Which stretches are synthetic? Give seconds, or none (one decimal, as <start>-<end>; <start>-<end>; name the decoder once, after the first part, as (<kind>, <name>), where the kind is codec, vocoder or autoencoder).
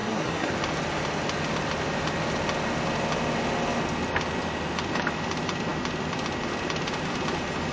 0.0-0.5 (codec, SNAC)